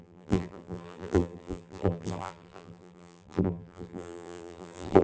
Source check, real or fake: fake